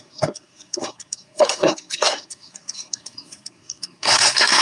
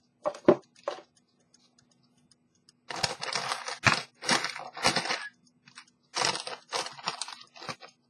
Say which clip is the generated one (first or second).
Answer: first